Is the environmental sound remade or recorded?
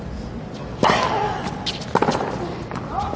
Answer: recorded